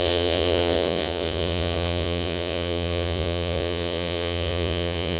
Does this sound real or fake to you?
fake